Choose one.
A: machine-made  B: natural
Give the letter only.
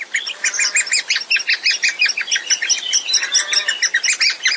B